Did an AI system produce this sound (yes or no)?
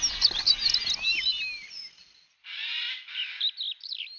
no